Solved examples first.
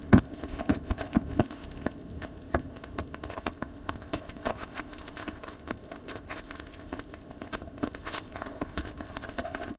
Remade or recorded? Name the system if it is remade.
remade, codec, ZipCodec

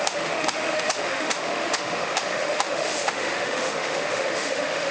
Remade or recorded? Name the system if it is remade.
remade, autoencoder, DAC-VAE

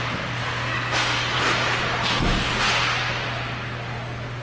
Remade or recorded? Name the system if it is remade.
recorded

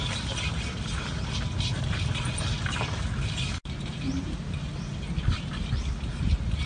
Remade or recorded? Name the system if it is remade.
recorded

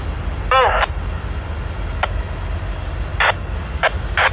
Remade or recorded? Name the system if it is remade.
recorded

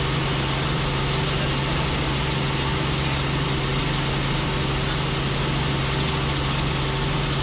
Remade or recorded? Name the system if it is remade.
recorded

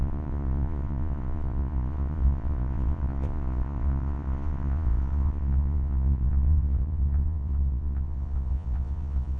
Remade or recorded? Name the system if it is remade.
remade, vocoder, Vocos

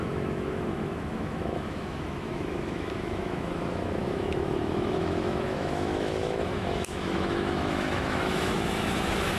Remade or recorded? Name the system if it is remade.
remade, autoencoder, DAC-VAE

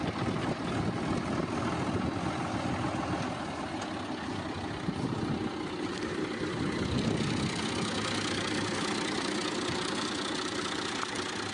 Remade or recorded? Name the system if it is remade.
recorded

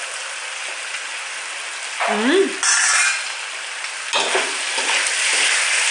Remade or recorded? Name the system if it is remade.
recorded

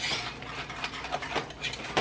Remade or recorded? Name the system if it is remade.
recorded